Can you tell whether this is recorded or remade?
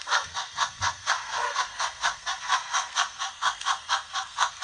remade